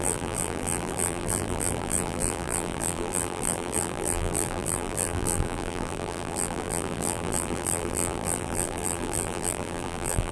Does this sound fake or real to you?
fake